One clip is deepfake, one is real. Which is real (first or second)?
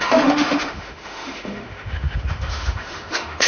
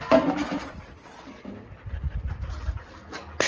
second